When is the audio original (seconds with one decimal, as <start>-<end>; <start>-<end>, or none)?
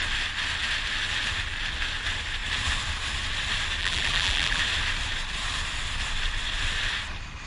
0.0-3.8; 4.6-7.5